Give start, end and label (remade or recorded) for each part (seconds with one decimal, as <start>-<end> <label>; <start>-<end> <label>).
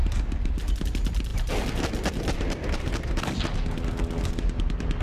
0.0-5.0 recorded